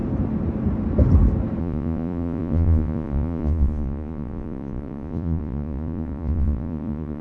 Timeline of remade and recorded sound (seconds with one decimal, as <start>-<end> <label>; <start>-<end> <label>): 0.0-1.6 recorded; 1.6-7.2 remade